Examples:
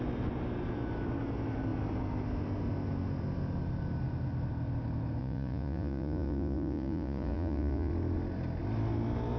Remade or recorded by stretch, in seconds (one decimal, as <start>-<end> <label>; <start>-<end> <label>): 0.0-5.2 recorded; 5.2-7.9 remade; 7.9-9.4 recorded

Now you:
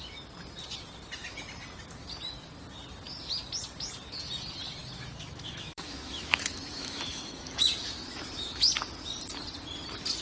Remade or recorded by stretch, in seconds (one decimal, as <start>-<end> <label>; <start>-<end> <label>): 0.0-4.8 recorded; 4.8-8.7 remade; 8.7-10.2 recorded

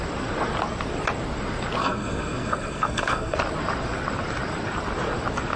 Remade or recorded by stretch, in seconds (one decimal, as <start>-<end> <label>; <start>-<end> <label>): 0.0-1.8 recorded; 1.8-3.4 remade; 3.4-5.6 recorded

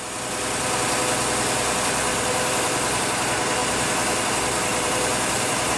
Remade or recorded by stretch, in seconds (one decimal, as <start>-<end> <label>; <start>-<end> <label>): 0.0-2.1 recorded; 2.1-3.0 remade; 3.0-3.6 recorded; 3.6-4.3 remade; 4.3-4.7 recorded; 4.7-5.8 remade